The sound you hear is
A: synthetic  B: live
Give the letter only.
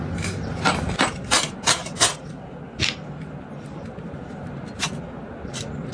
B